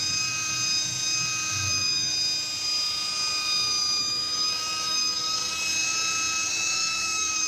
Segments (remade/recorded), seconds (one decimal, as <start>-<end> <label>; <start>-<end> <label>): 0.0-1.5 recorded; 1.5-2.1 remade; 2.1-4.0 recorded; 4.0-5.4 remade; 5.4-6.5 recorded; 6.5-7.5 remade